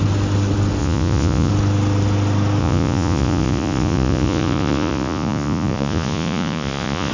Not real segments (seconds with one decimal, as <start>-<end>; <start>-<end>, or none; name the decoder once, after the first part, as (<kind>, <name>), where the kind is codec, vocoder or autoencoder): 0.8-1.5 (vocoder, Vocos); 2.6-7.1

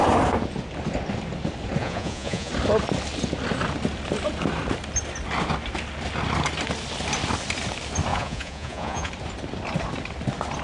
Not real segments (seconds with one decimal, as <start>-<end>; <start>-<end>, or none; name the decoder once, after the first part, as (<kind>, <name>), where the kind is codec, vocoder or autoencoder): 1.8-2.5 (vocoder, Vocos); 8.1-9.1

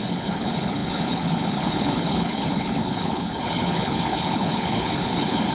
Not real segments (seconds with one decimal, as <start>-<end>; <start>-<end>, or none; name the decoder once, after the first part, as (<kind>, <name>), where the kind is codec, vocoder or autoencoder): 0.0-5.5 (codec, HILCodec)